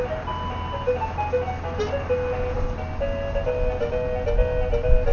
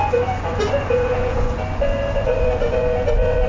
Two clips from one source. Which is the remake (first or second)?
second